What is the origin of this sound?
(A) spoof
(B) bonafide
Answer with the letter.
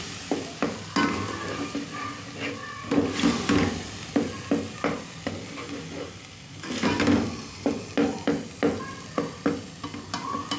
B